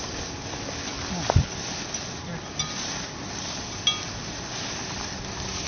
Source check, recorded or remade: recorded